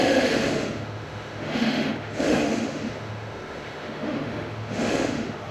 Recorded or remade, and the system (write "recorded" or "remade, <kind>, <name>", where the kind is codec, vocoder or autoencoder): remade, autoencoder, DAC-VAE